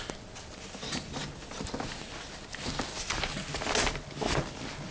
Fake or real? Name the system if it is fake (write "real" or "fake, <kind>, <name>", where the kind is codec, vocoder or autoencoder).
real